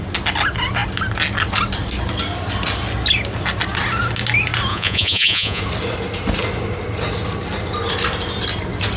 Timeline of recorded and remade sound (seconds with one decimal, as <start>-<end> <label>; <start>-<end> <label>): 0.0-4.7 recorded; 4.7-5.6 remade; 5.6-9.0 recorded